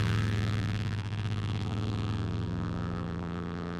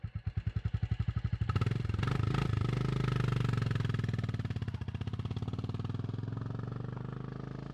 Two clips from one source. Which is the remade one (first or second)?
first